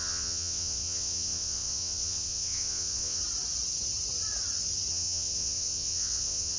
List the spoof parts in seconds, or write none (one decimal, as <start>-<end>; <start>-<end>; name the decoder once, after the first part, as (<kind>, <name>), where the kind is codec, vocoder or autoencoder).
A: 0.0-3.2 (vocoder, WaveNeXt); 4.9-6.6